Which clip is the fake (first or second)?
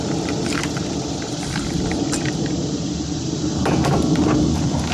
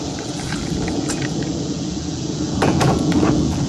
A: second